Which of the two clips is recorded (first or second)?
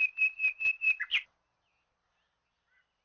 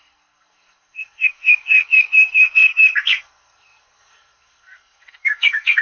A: first